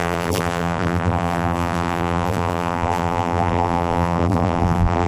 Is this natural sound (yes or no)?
no